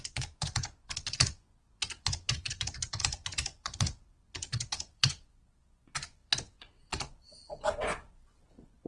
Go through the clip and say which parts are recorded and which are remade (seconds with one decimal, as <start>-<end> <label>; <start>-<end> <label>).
0.0-8.9 remade

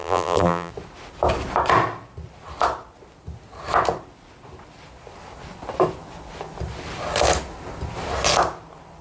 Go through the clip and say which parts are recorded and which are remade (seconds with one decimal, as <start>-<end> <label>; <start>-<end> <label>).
0.0-0.7 remade; 0.7-9.0 recorded